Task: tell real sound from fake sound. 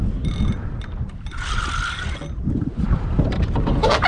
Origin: real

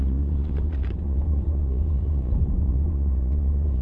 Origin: fake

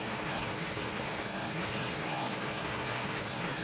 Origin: fake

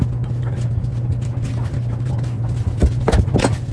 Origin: real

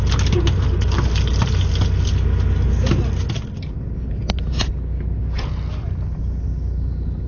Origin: real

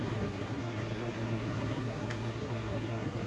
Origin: fake